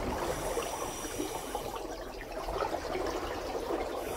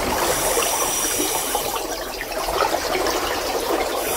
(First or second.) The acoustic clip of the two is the first